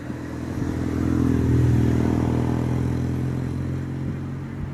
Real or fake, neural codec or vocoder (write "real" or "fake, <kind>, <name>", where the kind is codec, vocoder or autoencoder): real